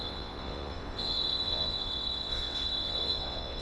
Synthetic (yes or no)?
yes